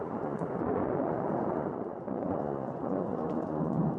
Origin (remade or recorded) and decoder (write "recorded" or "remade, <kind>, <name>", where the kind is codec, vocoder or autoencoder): remade, vocoder, Vocos